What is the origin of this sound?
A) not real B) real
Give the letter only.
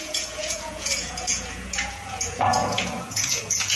A